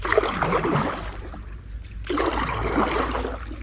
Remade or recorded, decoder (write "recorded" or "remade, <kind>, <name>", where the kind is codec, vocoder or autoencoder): recorded